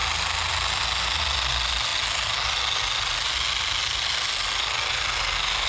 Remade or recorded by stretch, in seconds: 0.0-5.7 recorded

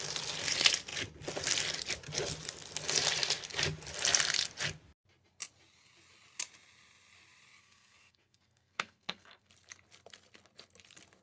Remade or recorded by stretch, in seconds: 0.0-7.6 recorded; 7.6-9.5 remade; 9.5-11.2 recorded

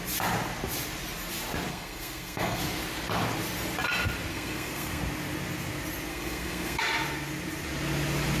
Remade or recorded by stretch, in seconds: 0.0-1.7 recorded; 1.7-2.6 remade; 2.6-4.3 recorded; 4.3-5.0 remade; 5.0-6.1 recorded; 6.1-6.8 remade; 6.8-8.4 recorded

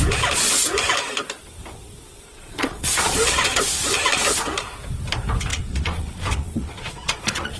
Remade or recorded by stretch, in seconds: 0.0-2.1 recorded; 2.1-3.6 remade; 3.6-5.5 recorded; 5.5-7.6 remade

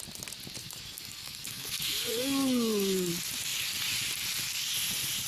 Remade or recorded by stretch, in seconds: 0.0-0.6 recorded; 0.6-3.1 remade; 3.1-5.3 recorded

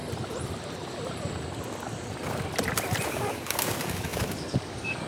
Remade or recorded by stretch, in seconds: 0.0-3.1 recorded; 3.1-5.1 remade